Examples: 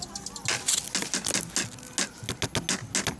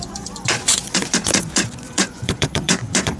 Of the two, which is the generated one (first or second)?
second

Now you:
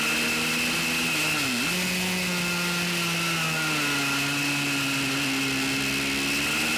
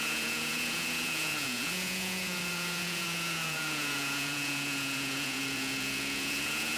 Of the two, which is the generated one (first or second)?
second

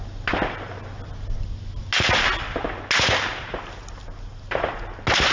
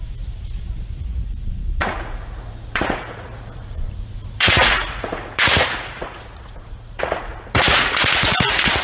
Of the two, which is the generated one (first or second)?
second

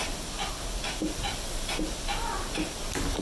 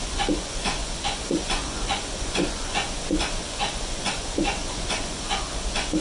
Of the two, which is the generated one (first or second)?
second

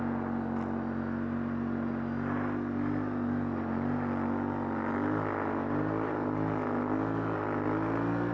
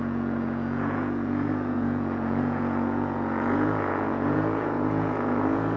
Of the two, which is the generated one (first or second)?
second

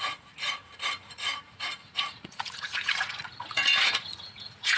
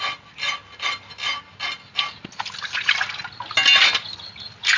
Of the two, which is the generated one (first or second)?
first